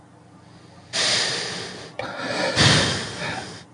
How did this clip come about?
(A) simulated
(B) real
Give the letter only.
B